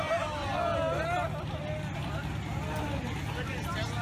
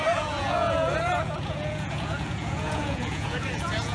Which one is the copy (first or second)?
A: second